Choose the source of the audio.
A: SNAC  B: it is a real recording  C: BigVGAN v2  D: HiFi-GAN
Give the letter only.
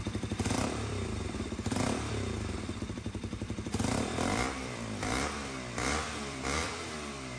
C